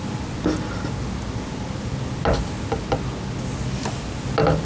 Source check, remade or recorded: recorded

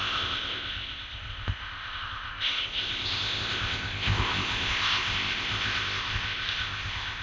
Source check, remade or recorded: remade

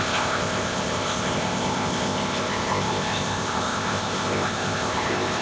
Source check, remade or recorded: remade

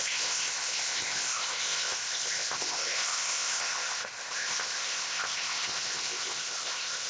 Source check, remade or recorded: remade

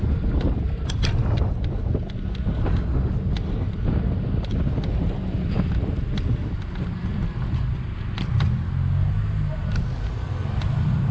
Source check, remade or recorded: recorded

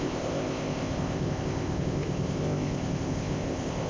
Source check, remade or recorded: remade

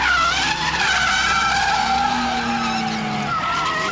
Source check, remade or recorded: recorded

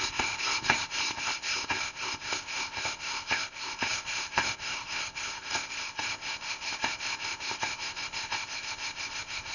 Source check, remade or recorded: remade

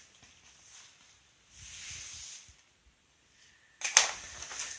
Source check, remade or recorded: recorded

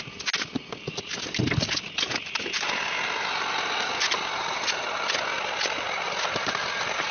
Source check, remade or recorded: recorded